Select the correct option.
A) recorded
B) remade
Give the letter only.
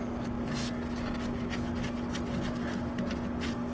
A